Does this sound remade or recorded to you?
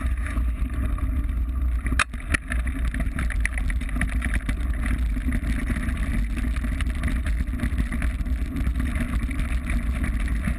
recorded